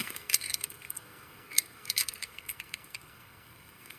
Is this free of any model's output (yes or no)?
no